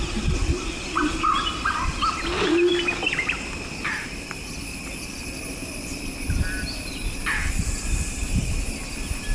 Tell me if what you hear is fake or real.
real